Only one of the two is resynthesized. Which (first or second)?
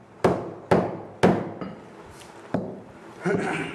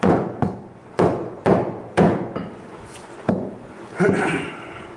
second